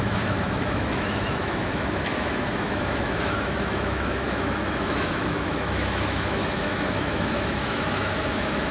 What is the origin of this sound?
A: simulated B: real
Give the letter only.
A